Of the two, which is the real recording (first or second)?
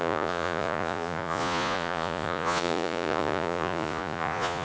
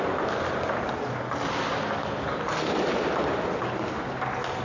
second